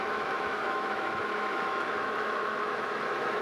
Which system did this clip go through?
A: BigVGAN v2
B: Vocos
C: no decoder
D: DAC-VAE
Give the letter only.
D